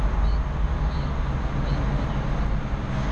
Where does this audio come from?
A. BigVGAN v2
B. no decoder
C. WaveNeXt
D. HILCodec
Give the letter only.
B